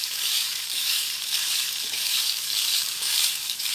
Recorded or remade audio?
remade